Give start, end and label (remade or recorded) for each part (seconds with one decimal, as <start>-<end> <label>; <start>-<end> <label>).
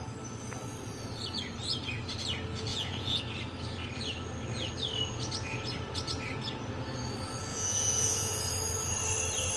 0.0-2.7 recorded; 2.7-3.2 remade; 3.2-7.5 recorded; 7.5-8.4 remade; 8.4-9.6 recorded